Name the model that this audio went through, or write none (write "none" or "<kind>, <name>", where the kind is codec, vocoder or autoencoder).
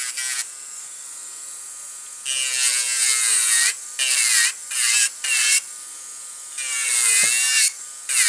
none